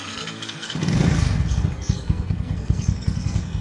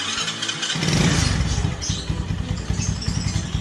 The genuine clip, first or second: second